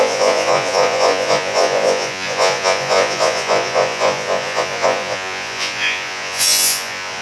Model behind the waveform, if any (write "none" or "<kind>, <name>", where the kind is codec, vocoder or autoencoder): vocoder, Vocos